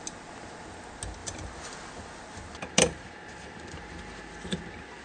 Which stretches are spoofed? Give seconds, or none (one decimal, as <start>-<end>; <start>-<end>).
1.2-4.2